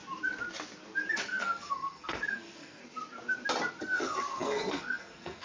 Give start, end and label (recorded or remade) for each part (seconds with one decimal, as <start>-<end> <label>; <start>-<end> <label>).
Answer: 0.0-1.1 recorded; 1.1-2.8 remade; 2.8-3.8 recorded; 3.8-5.4 remade